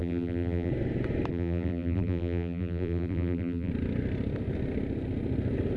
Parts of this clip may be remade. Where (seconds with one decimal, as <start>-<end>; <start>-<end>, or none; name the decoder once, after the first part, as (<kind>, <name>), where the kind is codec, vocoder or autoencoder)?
0.0-0.7 (vocoder, BigVGAN v2); 1.3-3.7